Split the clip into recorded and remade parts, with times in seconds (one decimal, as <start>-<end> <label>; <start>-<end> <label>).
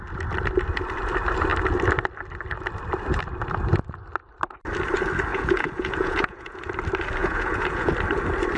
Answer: 0.0-5.3 recorded; 5.3-6.7 remade; 6.7-7.2 recorded; 7.2-7.9 remade; 7.9-8.6 recorded